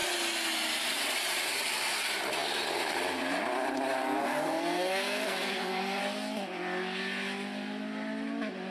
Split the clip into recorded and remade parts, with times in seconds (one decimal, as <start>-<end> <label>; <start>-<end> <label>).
0.0-4.0 recorded; 4.0-6.0 remade; 6.0-8.7 recorded